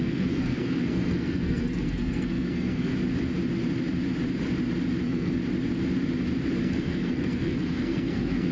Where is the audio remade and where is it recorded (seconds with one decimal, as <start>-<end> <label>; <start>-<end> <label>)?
0.0-2.9 remade; 2.9-5.0 recorded; 5.0-5.4 remade; 5.4-6.6 recorded; 6.6-8.5 remade